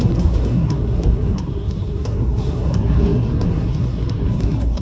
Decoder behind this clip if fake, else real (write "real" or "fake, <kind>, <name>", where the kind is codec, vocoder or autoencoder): fake, codec, SNAC